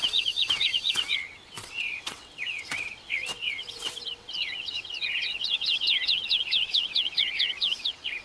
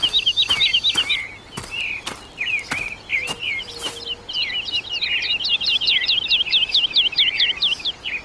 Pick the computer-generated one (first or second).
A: first